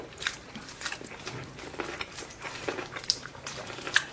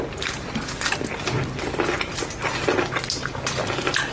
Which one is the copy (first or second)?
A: first